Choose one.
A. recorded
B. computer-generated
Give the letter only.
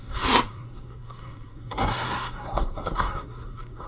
B